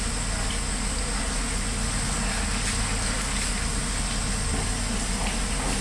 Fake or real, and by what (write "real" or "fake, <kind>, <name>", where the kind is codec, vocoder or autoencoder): real